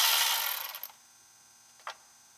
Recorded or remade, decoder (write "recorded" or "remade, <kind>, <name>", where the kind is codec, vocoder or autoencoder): recorded